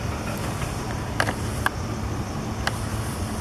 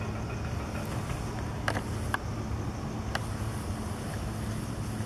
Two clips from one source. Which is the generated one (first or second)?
first